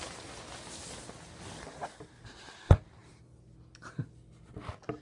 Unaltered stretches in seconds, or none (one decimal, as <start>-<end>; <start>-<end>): 0.0-5.0